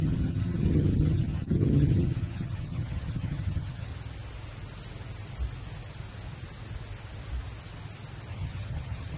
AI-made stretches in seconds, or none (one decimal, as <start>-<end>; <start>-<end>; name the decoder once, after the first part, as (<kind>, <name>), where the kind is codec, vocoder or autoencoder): 0.0-3.9 (vocoder, HiFi-GAN); 8.3-9.2